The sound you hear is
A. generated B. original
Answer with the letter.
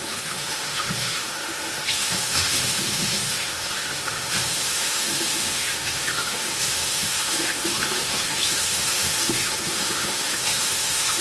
A